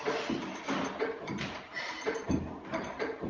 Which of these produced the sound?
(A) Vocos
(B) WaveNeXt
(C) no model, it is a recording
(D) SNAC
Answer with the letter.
C